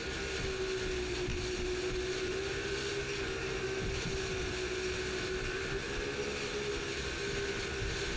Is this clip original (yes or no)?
yes